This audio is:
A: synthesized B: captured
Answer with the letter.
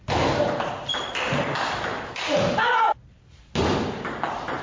B